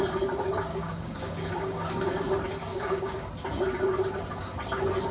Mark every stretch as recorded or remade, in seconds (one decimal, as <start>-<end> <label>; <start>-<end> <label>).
0.0-0.7 recorded; 0.7-2.2 remade; 2.2-2.7 recorded; 2.7-3.3 remade; 3.3-5.1 recorded